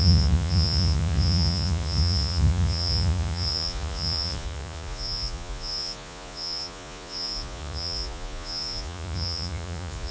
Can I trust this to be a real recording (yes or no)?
no